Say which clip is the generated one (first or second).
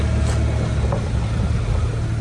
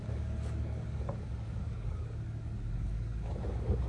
second